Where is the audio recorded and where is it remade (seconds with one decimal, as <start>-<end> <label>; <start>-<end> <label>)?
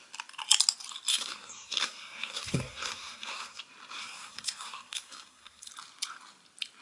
0.0-1.1 recorded; 1.1-3.6 remade; 3.6-4.0 recorded; 4.0-5.7 remade; 5.7-6.8 recorded